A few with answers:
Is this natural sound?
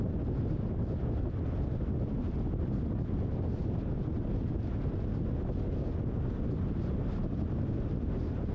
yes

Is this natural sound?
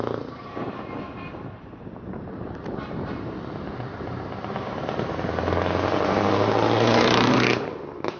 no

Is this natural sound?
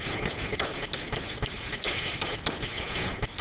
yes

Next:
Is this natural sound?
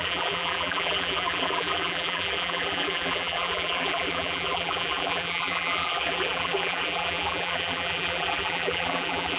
no